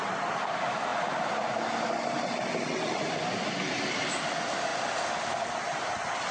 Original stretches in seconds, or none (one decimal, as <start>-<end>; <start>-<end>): 0.0-6.3